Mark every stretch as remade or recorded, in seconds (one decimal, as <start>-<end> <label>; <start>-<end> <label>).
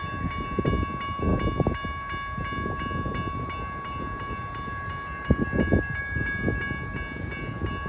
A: 0.0-7.9 recorded